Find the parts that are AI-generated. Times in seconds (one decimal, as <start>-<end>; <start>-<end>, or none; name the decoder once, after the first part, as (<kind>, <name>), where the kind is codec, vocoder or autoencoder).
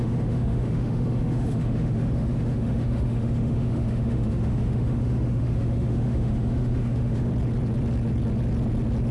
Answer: 0.0-7.3 (autoencoder, DAC-VAE)